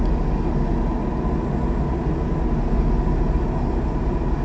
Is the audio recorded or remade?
recorded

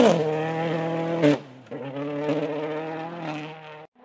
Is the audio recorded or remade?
recorded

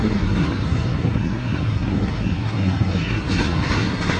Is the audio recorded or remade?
remade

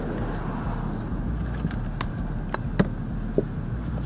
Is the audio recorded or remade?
recorded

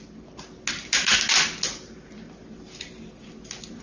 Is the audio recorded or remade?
recorded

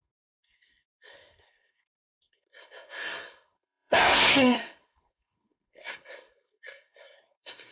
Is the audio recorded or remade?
remade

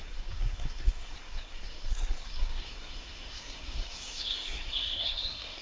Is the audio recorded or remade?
remade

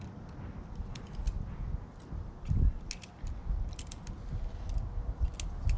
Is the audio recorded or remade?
recorded